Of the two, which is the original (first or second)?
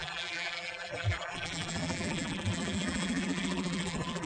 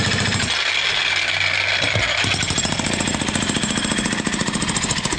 second